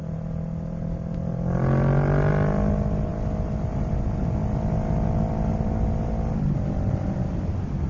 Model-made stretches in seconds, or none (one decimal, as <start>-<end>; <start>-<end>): none